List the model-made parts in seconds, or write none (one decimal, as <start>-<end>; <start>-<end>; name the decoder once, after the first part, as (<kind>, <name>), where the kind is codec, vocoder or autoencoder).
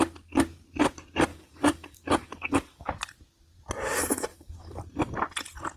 1.3-2.9 (codec, DAC); 4.3-4.8